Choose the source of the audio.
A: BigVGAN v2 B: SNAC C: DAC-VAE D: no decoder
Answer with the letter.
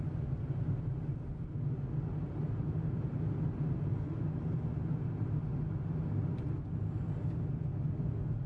D